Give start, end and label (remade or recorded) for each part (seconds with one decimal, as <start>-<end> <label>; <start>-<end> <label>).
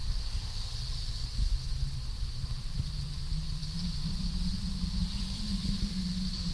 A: 0.0-6.5 recorded